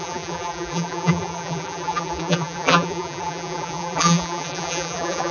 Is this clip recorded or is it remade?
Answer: remade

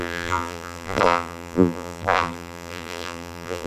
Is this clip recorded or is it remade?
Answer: remade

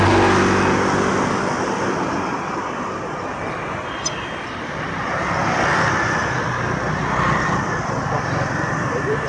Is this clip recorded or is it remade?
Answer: recorded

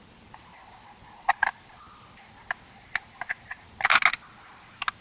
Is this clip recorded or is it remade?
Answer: recorded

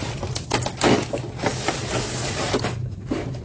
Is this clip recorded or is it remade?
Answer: recorded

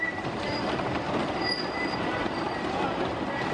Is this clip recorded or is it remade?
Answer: recorded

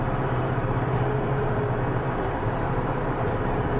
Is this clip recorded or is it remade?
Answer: remade